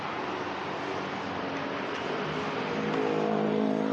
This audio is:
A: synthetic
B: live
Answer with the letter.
B